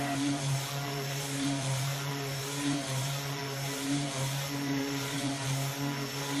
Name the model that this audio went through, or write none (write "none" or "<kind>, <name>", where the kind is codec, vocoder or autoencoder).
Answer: vocoder, BigVGAN v2